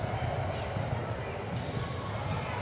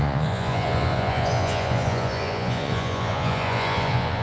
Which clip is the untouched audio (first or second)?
first